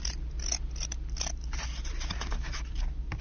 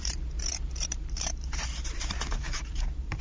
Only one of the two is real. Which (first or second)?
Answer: first